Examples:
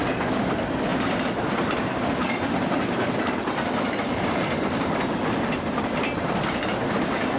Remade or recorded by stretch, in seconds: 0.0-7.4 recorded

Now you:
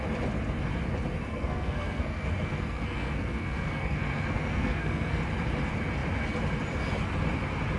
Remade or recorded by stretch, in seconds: 0.0-1.3 recorded; 1.3-5.2 remade; 5.2-7.8 recorded

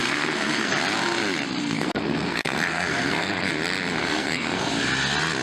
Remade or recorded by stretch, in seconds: 0.0-0.7 remade; 0.7-1.6 recorded; 1.6-3.5 remade; 3.5-4.0 recorded; 4.0-4.7 remade; 4.7-5.4 recorded

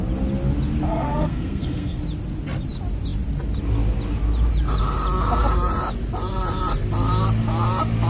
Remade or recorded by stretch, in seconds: 0.0-0.9 recorded; 0.9-2.0 remade; 2.0-8.1 recorded